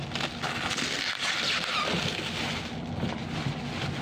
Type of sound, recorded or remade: recorded